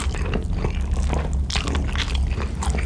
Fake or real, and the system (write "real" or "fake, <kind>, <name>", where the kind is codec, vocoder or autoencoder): real